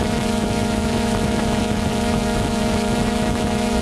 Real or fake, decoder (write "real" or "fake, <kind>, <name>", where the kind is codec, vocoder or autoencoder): fake, autoencoder, DAC-VAE